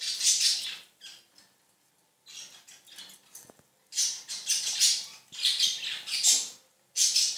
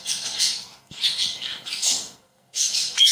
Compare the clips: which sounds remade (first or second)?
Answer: second